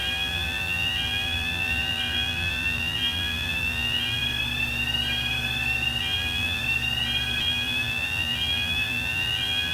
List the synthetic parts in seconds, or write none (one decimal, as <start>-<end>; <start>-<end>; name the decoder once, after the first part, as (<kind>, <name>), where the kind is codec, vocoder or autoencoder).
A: 0.0-4.2 (vocoder, BigVGAN v2); 6.0-6.6; 7.4-9.7